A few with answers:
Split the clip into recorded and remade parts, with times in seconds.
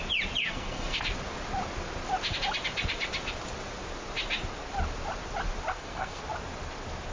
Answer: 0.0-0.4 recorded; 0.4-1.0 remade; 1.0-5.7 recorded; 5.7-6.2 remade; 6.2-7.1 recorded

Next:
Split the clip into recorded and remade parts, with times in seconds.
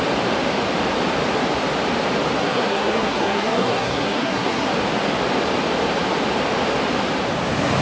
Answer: 0.0-2.4 recorded; 2.4-4.7 remade; 4.7-7.8 recorded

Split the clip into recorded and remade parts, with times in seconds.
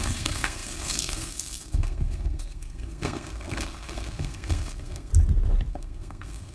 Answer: 0.0-5.1 remade; 5.1-5.7 recorded; 5.7-6.5 remade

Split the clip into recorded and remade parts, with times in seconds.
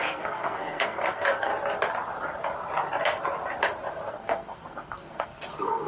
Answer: 0.0-1.5 remade; 1.5-4.1 recorded; 4.1-5.9 remade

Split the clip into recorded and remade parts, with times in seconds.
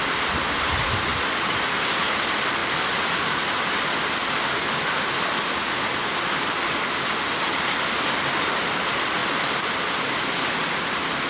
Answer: 0.0-11.3 recorded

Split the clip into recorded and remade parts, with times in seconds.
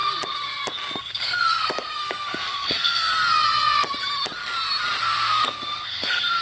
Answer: 0.0-1.0 recorded; 1.0-3.1 remade; 3.1-5.0 recorded; 5.0-6.4 remade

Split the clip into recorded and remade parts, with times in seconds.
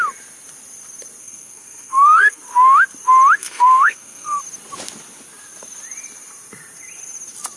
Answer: 0.0-1.2 recorded; 1.2-2.4 remade; 2.4-3.4 recorded; 3.4-4.4 remade; 4.4-7.6 recorded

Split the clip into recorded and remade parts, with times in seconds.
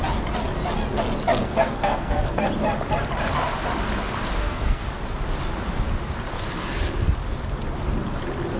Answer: 0.0-1.4 recorded; 1.4-2.4 remade; 2.4-4.4 recorded; 4.4-5.0 remade; 5.0-8.6 recorded